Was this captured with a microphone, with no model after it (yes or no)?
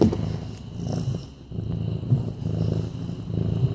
yes